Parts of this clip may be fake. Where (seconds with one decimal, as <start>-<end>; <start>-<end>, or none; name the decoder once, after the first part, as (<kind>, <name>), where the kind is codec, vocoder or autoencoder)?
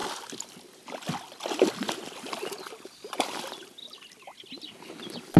none